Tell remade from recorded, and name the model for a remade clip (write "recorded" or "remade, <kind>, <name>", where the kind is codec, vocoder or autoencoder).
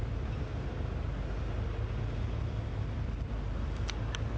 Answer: recorded